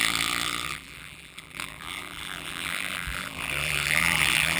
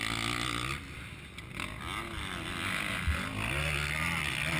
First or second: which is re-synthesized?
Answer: first